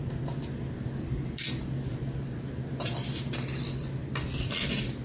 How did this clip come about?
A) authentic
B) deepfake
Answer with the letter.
A